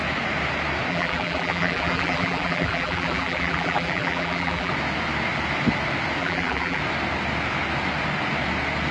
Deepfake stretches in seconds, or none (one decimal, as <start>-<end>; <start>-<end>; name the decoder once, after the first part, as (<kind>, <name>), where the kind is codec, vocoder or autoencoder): 0.9-4.7 (vocoder, BigVGAN v2); 6.2-6.8